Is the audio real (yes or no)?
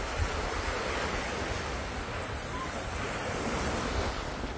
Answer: yes